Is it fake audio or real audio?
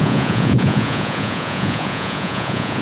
fake